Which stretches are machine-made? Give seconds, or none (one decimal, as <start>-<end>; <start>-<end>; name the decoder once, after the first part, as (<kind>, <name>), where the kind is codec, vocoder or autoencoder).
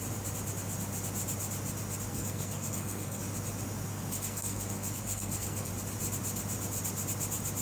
2.1-3.2 (codec, SNAC); 3.9-5.7